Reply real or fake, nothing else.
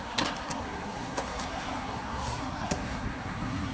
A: fake